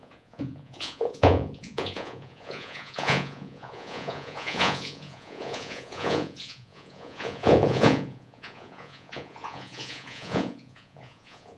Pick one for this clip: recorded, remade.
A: remade